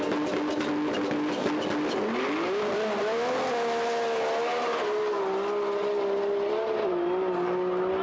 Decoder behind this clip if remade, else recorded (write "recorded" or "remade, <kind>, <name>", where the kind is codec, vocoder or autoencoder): recorded